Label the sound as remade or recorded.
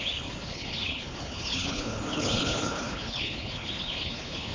remade